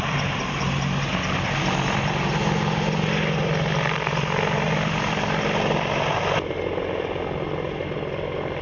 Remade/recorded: recorded